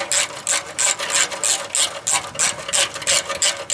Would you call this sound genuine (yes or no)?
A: yes